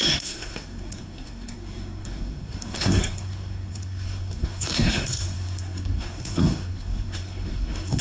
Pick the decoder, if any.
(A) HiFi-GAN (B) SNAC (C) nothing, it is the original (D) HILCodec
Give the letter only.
B